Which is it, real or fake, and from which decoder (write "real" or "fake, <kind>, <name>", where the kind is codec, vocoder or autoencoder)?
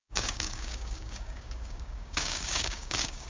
fake, codec, DAC